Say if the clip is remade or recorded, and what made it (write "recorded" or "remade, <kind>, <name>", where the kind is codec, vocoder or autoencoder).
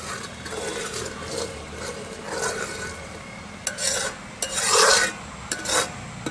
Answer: recorded